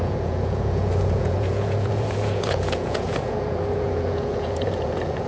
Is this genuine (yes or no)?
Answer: no